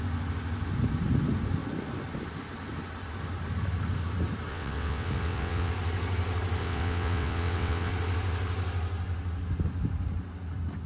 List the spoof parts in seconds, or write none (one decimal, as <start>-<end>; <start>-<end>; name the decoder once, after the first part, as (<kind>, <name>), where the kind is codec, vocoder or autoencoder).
4.5-5.7 (vocoder, WaveNeXt); 6.6-7.9